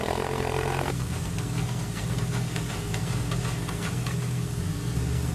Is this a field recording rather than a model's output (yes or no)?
no